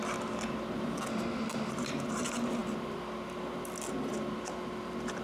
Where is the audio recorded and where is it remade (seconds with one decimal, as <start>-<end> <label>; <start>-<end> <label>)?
0.0-1.1 recorded; 1.1-1.7 remade; 1.7-5.2 recorded

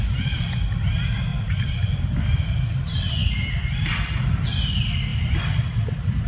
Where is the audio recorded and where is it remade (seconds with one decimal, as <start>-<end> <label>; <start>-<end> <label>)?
0.0-1.3 recorded; 1.3-2.0 remade; 2.0-5.1 recorded; 5.1-5.6 remade; 5.6-6.3 recorded

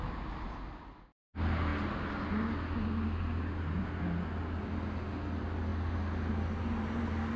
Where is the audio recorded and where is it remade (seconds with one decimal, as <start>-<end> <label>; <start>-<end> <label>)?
0.0-7.4 recorded

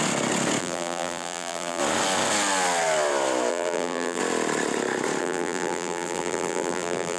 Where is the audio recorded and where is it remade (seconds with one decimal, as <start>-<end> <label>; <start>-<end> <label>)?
0.0-0.6 recorded; 0.6-1.8 remade; 1.8-3.5 recorded; 3.5-4.2 remade; 4.2-5.2 recorded; 5.2-7.2 remade

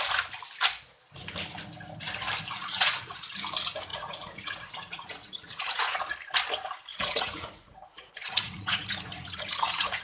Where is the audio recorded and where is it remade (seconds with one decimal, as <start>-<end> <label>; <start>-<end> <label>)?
0.0-2.6 recorded; 2.6-3.3 remade; 3.3-3.9 recorded; 3.9-6.0 remade; 6.0-6.9 recorded; 6.9-10.0 remade